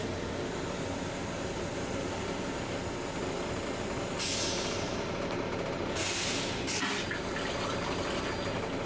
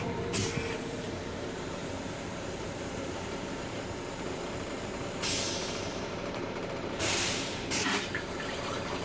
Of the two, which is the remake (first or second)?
second